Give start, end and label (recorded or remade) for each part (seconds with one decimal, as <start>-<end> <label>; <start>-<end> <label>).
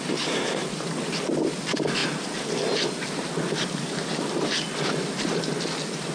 0.0-6.1 recorded